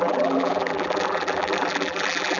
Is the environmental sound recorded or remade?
remade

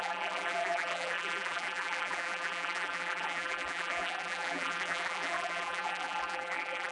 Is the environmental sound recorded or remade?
remade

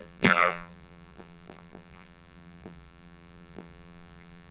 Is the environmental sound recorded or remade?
remade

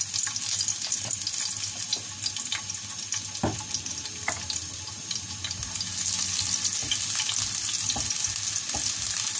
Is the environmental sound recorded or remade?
recorded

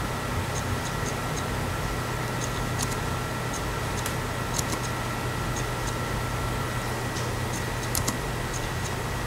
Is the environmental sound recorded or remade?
recorded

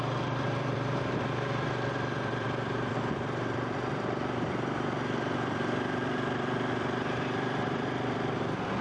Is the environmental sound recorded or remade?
remade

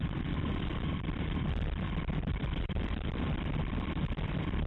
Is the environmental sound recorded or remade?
remade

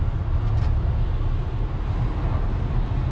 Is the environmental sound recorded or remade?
recorded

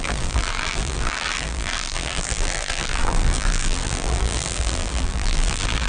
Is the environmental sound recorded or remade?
remade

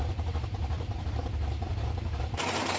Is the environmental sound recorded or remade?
remade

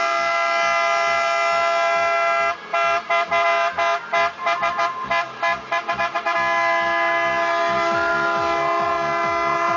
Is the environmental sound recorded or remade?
recorded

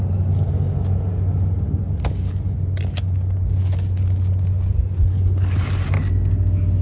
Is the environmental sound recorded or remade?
recorded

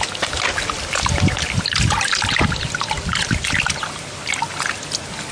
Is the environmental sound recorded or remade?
recorded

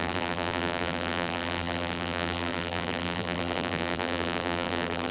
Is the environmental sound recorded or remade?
remade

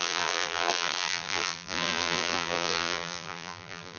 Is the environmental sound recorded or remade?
remade